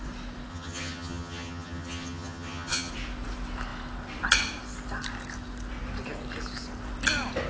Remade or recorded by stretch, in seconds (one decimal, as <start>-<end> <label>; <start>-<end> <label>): 0.0-0.5 recorded; 0.5-2.9 remade; 2.9-7.5 recorded